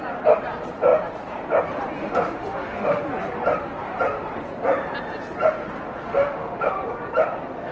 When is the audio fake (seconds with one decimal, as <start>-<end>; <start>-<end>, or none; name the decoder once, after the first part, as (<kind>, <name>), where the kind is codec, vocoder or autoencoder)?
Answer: 2.0-3.0 (autoencoder, DAC-VAE); 6.1-6.7